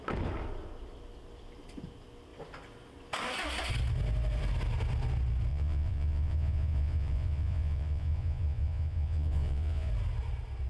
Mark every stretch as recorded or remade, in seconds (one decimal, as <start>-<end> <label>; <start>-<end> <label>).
0.0-5.5 recorded; 5.5-9.9 remade; 9.9-10.7 recorded